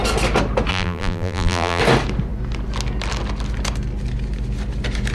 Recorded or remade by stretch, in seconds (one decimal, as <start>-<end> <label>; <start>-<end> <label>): 0.0-0.7 recorded; 0.7-1.8 remade; 1.8-5.1 recorded